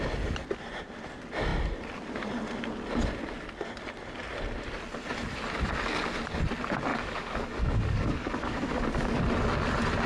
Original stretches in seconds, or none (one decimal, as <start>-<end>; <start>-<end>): 0.0-6.9; 9.2-10.1